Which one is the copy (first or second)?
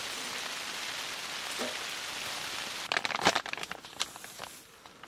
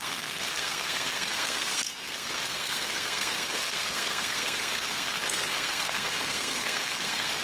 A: second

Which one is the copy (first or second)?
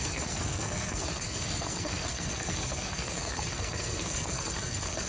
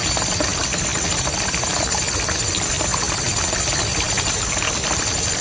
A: first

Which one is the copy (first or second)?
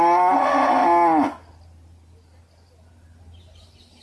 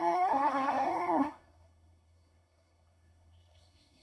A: second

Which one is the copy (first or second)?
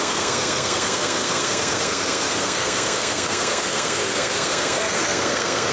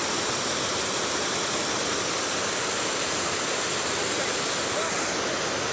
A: first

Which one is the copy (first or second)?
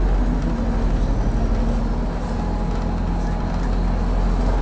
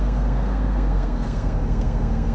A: second